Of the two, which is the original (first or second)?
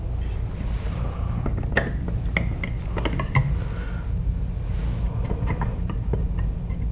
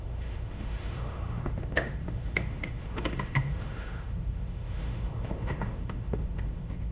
first